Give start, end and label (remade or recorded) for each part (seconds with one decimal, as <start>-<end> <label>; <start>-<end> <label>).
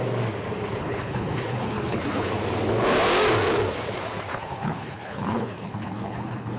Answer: 0.0-0.8 recorded; 0.8-2.3 remade; 2.3-4.3 recorded; 4.3-6.6 remade